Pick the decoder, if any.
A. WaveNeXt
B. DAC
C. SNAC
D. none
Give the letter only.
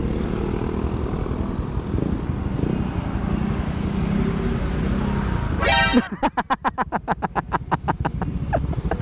D